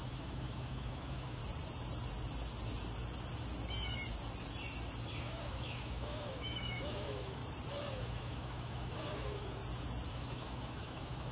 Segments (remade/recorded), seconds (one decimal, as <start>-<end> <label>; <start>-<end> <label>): 0.0-1.4 remade; 1.4-5.2 recorded; 5.2-7.4 remade; 7.4-7.9 recorded; 7.9-9.6 remade; 9.6-10.1 recorded; 10.1-11.3 remade